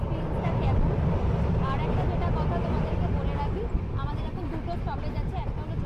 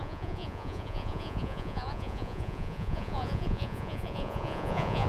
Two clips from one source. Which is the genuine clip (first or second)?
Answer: first